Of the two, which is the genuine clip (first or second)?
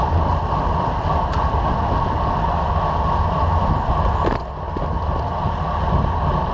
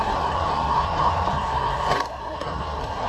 first